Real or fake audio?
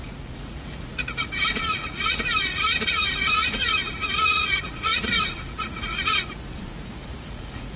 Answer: fake